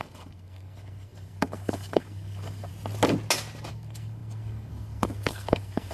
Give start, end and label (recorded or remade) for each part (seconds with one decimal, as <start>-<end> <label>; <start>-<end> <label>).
0.0-2.7 remade; 2.7-3.7 recorded; 3.7-5.9 remade

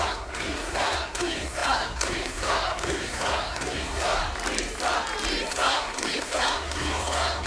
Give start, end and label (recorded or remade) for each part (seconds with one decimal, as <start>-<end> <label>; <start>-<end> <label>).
0.0-4.2 remade; 4.2-5.5 recorded; 5.5-7.5 remade

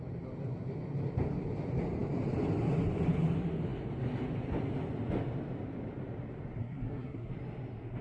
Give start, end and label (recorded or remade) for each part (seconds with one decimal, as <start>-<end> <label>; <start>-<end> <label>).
0.0-6.6 recorded; 6.6-7.3 remade; 7.3-8.0 recorded

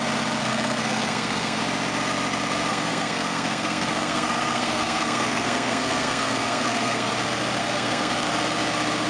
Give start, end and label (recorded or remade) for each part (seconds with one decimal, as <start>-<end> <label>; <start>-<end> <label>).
0.0-0.4 recorded; 0.4-1.6 remade; 1.6-2.7 recorded; 2.7-7.1 remade; 7.1-7.6 recorded; 7.6-8.3 remade; 8.3-9.1 recorded

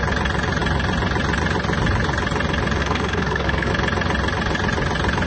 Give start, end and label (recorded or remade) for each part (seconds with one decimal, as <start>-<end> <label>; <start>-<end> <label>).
0.0-2.8 recorded; 2.8-3.7 remade; 3.7-5.3 recorded

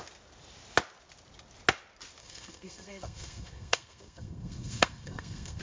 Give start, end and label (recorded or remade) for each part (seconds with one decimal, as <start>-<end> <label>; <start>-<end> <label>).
0.0-2.2 recorded; 2.2-5.6 remade

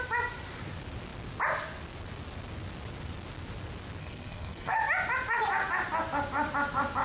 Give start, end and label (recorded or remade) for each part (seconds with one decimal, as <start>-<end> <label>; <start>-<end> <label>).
0.0-4.0 recorded; 4.0-4.8 remade; 4.8-7.0 recorded

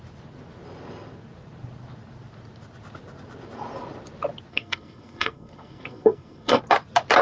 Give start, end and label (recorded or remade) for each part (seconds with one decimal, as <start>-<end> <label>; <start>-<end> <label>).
0.0-4.5 recorded; 4.5-6.6 remade; 6.6-7.2 recorded